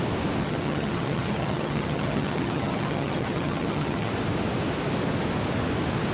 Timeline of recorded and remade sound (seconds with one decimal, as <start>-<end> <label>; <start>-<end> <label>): 0.0-0.4 recorded; 0.4-4.1 remade; 4.1-6.1 recorded